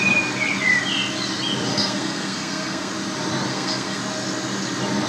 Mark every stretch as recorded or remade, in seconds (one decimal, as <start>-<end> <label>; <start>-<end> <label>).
0.0-1.7 recorded; 1.7-2.9 remade; 2.9-3.5 recorded; 3.5-4.0 remade; 4.0-5.1 recorded

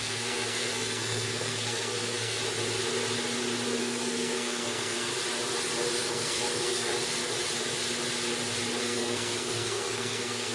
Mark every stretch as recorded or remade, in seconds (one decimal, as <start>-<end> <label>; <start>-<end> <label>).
0.0-2.4 remade; 2.4-3.8 recorded; 3.8-5.1 remade; 5.1-6.0 recorded; 6.0-6.9 remade; 6.9-8.8 recorded; 8.8-10.5 remade

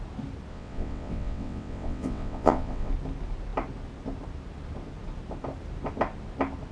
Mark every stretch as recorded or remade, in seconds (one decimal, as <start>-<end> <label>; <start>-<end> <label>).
0.0-0.5 recorded; 0.5-2.9 remade; 2.9-6.7 recorded